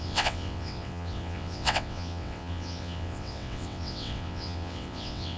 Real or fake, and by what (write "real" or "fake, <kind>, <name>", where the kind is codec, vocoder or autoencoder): fake, vocoder, WaveNeXt